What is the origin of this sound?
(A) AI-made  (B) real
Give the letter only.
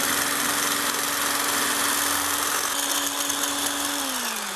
B